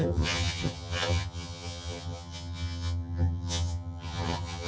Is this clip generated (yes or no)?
yes